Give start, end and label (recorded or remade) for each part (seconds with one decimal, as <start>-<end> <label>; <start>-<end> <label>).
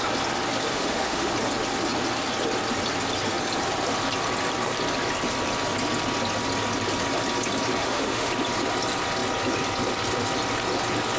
0.0-0.7 recorded; 0.7-1.3 remade; 1.3-7.8 recorded; 7.8-8.3 remade; 8.3-11.2 recorded